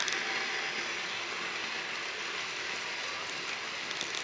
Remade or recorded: recorded